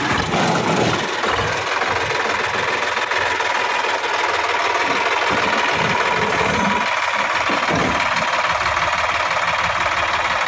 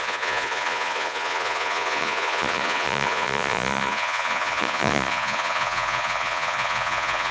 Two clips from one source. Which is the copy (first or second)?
second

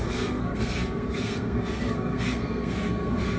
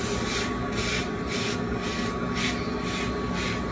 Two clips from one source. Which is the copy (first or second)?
first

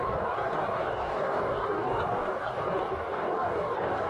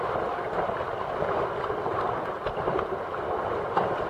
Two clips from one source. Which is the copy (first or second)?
first